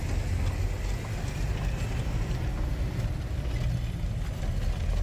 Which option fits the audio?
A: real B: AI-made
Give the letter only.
A